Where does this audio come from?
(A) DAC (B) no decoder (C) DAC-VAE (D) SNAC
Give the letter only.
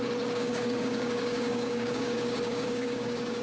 A